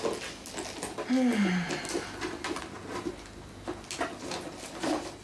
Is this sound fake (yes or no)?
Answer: no